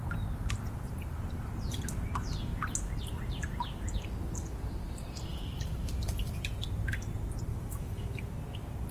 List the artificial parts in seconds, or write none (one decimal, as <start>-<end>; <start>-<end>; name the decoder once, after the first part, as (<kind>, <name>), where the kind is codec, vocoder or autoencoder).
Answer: 7.5-8.2 (autoencoder, DAC-VAE)